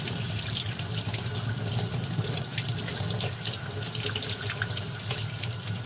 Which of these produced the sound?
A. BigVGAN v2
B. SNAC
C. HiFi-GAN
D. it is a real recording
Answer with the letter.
D